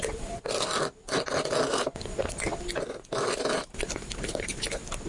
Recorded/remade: recorded